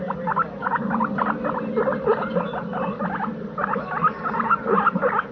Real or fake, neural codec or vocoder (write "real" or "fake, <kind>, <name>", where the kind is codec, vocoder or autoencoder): real